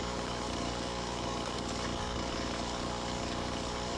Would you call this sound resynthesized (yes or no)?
yes